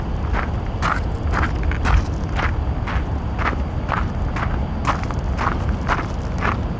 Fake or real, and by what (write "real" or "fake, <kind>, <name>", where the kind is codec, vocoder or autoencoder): real